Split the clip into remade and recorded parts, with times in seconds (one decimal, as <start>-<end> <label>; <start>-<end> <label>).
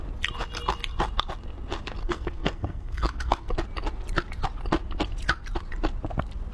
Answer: 0.0-2.0 recorded; 2.0-3.5 remade; 3.5-6.5 recorded